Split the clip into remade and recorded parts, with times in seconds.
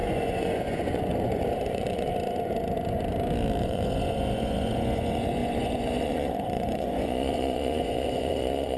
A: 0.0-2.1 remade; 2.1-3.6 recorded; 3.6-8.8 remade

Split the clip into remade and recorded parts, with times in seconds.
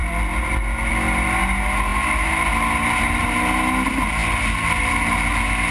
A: 0.0-5.7 recorded